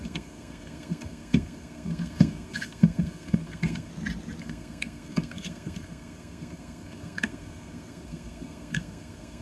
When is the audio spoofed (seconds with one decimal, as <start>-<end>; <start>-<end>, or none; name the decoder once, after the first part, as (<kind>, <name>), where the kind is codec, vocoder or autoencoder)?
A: 0.0-3.9 (codec, SNAC); 4.4-9.4